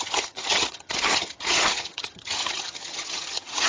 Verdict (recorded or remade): remade